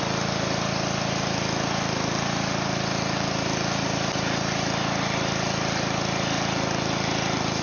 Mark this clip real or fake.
real